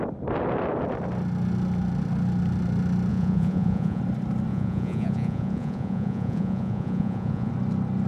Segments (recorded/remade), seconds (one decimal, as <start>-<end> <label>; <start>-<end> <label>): 0.0-3.1 recorded; 3.1-4.0 remade; 4.0-4.5 recorded; 4.5-7.5 remade; 7.5-8.1 recorded